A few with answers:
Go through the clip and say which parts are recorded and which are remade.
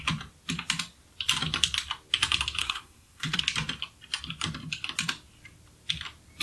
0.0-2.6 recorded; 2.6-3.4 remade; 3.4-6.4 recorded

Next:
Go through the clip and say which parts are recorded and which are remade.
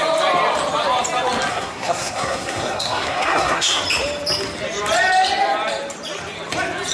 0.0-1.5 recorded; 1.5-3.8 remade; 3.8-6.9 recorded